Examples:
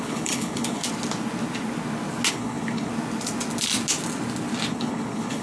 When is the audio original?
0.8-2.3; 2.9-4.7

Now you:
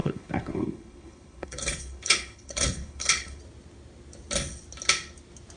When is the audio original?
3.4-5.6

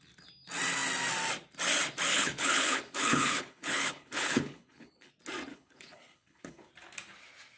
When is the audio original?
0.0-2.1; 5.1-5.5; 6.7-7.6

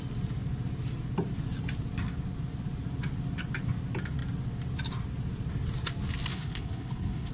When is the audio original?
0.0-6.3